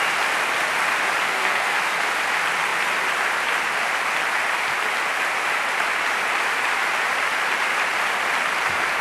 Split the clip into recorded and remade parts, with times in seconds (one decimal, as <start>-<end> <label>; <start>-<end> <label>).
0.0-1.3 recorded; 1.3-1.8 remade; 1.8-9.0 recorded